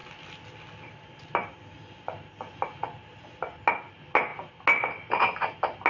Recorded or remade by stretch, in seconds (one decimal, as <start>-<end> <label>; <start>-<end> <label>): 0.0-5.9 recorded